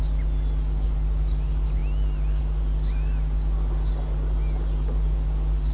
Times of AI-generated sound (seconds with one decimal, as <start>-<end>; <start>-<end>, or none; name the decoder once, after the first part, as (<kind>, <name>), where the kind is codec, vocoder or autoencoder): none